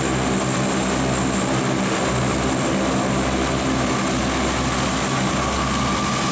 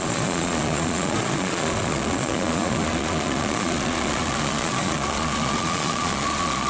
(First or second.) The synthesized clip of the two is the second